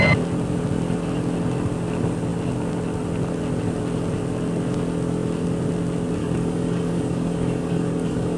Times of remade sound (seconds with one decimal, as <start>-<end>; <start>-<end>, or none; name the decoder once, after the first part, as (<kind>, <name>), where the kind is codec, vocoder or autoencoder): 6.2-8.4 (codec, DAC)